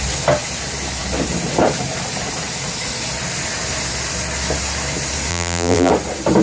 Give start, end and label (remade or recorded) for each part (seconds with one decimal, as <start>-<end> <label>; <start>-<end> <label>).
0.0-5.3 recorded; 5.3-5.9 remade; 5.9-6.4 recorded